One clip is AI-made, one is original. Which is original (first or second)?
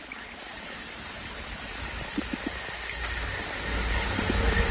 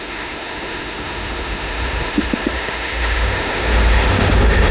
first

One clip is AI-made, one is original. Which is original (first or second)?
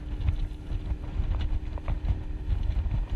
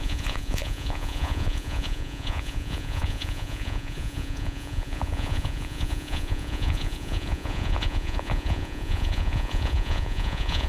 first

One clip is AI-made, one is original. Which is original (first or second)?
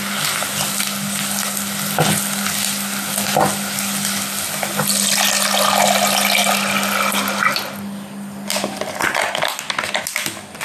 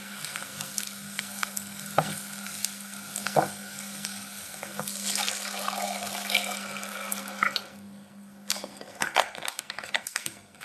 first